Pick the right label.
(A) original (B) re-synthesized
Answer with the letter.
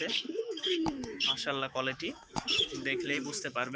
B